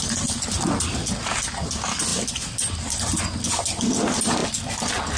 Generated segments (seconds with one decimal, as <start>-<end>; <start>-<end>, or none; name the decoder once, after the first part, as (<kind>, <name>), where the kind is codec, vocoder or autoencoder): none